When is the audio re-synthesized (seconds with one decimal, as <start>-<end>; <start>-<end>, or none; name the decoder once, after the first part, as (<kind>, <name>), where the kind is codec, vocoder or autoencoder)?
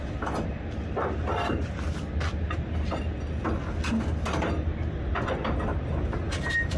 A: 5.7-6.8 (vocoder, BigVGAN v2)